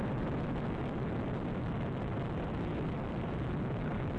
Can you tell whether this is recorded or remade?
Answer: recorded